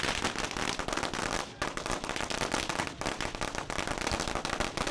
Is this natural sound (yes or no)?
yes